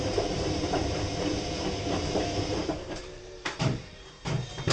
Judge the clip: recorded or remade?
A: remade